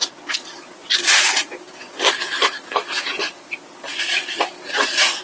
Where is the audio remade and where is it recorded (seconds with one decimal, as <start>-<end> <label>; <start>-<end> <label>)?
0.0-5.2 recorded